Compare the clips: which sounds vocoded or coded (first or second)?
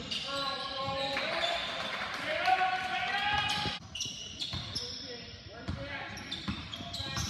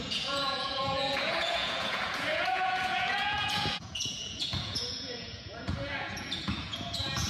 second